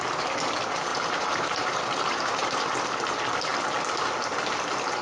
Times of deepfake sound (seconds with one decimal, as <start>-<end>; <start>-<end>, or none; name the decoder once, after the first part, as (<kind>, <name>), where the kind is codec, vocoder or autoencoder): 0.9-2.6 (vocoder, BigVGAN v2)